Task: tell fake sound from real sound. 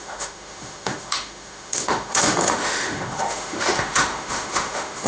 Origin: fake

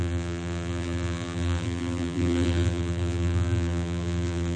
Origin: fake